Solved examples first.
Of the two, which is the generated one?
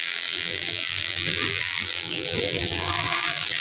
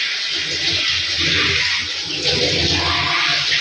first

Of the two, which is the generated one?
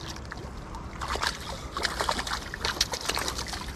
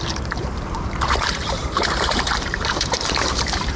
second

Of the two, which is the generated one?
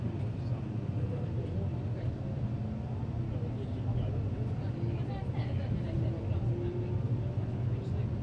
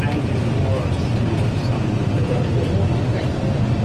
second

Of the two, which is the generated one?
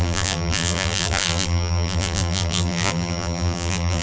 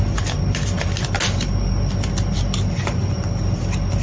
first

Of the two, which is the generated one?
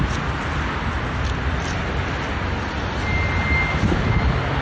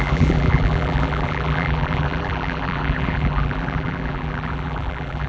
second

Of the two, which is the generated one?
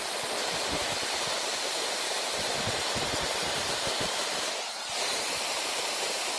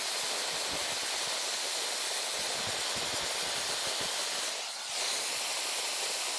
first